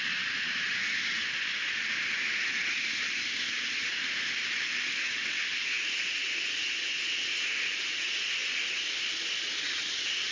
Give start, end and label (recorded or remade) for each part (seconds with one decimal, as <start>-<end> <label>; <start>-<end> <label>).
0.0-10.3 recorded